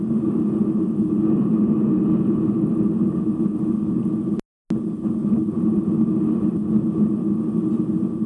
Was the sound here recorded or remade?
recorded